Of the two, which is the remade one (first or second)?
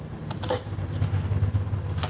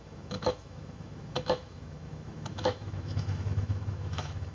second